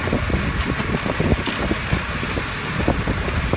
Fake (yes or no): no